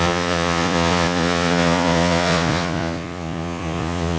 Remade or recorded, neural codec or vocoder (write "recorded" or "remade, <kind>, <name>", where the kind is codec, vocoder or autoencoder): remade, vocoder, Vocos